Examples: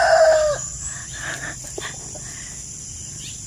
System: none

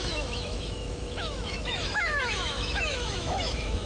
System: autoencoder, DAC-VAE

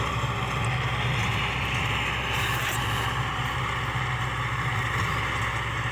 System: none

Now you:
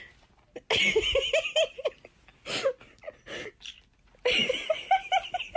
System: none